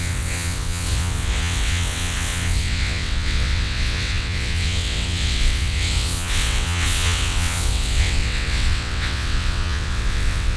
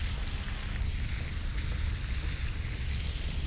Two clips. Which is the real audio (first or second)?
second